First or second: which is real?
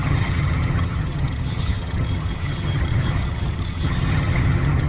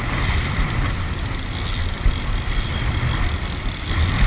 second